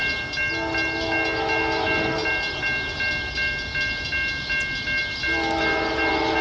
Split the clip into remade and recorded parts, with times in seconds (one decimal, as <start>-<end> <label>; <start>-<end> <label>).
0.0-6.4 recorded